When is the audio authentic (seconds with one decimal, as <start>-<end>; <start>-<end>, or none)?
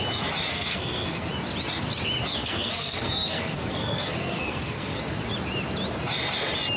0.0-0.5; 1.3-2.4; 5.0-6.8